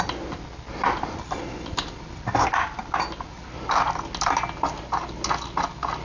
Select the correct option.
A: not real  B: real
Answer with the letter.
B